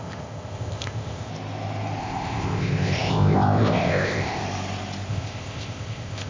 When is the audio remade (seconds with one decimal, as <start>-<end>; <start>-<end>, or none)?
0.0-1.3; 2.0-4.4; 5.1-6.3